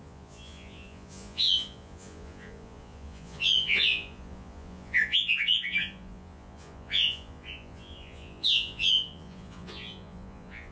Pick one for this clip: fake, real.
fake